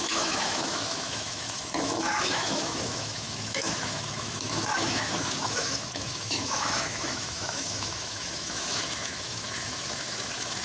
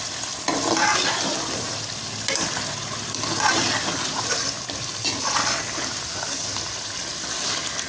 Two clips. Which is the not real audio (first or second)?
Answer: first